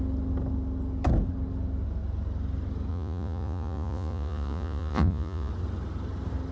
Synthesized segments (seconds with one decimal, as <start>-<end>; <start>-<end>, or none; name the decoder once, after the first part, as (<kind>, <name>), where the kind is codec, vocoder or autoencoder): 2.9-5.5 (vocoder, Vocos)